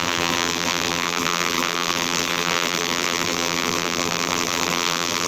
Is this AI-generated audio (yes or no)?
yes